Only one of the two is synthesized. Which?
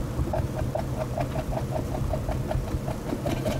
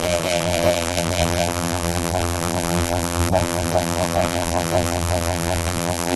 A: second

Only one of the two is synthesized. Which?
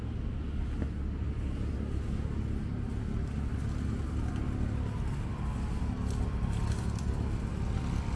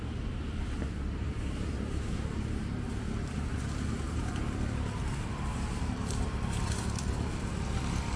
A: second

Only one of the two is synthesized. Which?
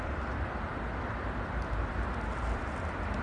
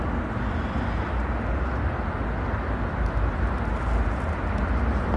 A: first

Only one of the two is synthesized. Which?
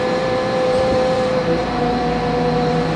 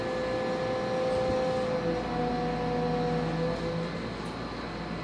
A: first